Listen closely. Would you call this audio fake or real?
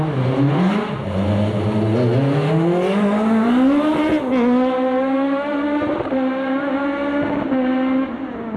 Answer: real